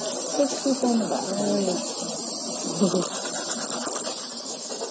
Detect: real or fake real